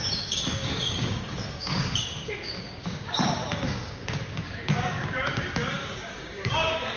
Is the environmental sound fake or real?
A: fake